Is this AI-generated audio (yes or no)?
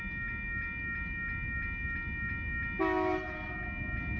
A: no